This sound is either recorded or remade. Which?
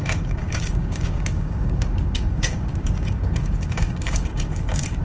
remade